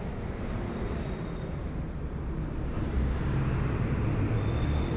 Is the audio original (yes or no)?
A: yes